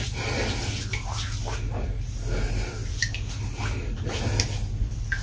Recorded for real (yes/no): yes